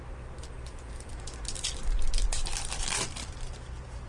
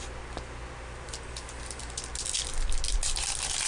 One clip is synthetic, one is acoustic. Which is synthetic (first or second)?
first